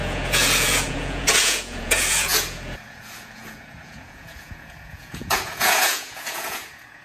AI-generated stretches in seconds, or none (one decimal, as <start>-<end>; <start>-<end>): 0.0-7.0